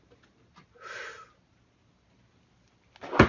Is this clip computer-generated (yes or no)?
no